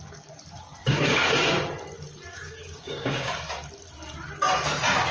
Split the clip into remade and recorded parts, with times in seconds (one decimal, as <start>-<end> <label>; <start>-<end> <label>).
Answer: 0.0-0.8 recorded; 0.8-1.5 remade; 1.5-2.3 recorded; 2.3-3.3 remade; 3.3-5.1 recorded